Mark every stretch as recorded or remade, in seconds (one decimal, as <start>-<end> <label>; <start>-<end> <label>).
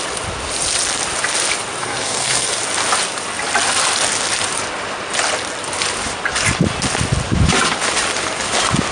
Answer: 0.0-1.8 recorded; 1.8-2.6 remade; 2.6-8.9 recorded